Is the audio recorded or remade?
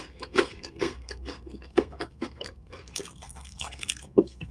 remade